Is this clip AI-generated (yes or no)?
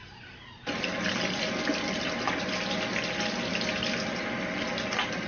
no